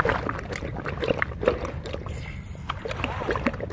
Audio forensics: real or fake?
real